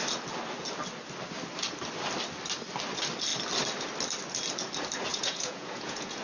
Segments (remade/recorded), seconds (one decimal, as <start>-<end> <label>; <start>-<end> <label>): 0.0-5.1 recorded; 5.1-6.2 remade